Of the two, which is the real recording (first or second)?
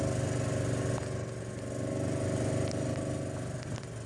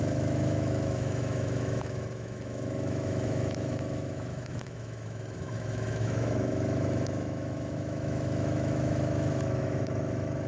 first